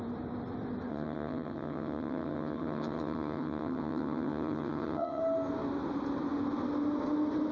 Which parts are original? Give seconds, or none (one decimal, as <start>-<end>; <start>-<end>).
0.0-0.9; 5.2-7.5

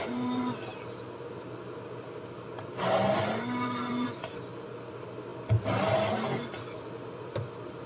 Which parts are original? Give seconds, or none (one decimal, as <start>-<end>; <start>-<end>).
0.0-7.9

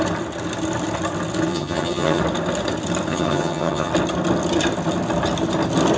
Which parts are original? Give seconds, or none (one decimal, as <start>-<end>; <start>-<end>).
0.0-1.5; 2.2-3.1; 3.9-6.0

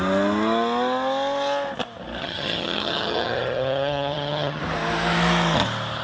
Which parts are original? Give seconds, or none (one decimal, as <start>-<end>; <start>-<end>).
0.0-2.2; 4.6-6.0

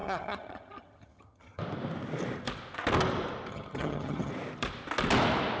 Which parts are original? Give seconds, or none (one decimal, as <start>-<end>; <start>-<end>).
1.6-3.5; 4.3-5.6

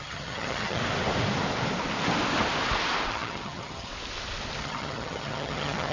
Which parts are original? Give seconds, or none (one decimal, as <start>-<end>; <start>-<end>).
0.8-3.1; 3.9-4.6

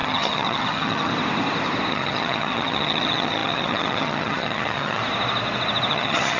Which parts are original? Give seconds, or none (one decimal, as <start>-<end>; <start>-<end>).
1.1-1.9; 5.0-5.9

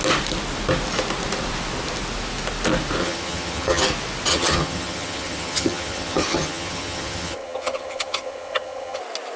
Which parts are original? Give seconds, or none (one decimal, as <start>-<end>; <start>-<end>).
0.0-3.0; 3.8-4.3; 9.0-9.4